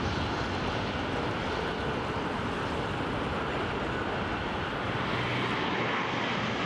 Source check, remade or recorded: recorded